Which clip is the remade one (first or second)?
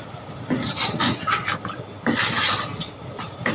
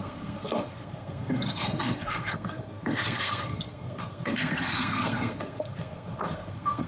second